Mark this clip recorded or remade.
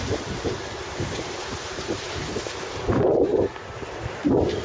remade